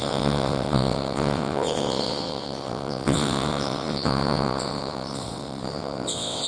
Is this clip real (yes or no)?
no